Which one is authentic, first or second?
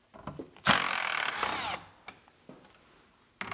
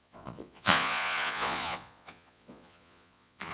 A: first